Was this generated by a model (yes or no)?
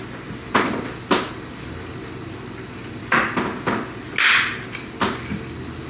no